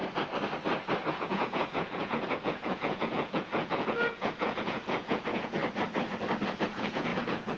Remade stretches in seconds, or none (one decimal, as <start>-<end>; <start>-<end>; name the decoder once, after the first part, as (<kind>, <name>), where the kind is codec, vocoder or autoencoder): 1.1-5.6 (vocoder, Vocos); 6.5-7.6